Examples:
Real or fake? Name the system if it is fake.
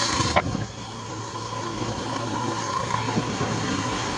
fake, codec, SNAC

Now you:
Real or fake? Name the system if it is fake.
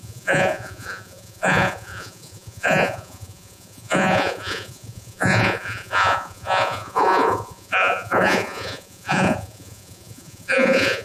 fake, vocoder, Vocos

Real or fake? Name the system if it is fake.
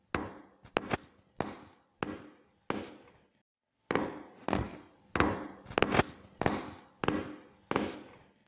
real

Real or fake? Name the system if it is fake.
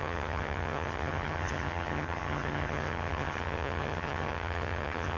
fake, vocoder, HiFi-GAN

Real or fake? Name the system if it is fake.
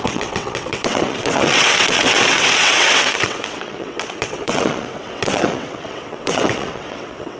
fake, vocoder, WaveNeXt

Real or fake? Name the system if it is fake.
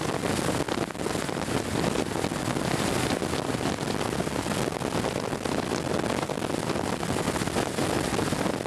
real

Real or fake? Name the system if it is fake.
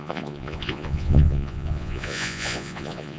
fake, vocoder, Vocos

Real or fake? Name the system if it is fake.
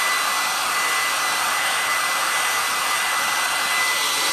real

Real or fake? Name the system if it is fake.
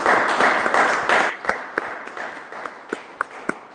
real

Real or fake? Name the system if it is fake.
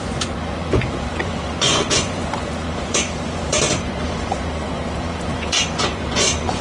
fake, vocoder, Vocos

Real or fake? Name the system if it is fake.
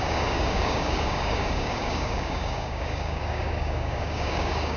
fake, codec, DAC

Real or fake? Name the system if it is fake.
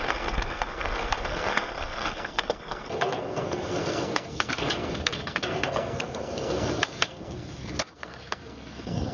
fake, codec, SNAC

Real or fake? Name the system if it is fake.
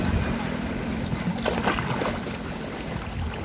real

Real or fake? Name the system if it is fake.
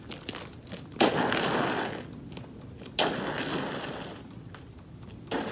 real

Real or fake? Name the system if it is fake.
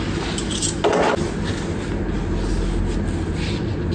real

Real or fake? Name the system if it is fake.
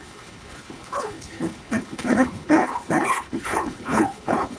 fake, codec, HILCodec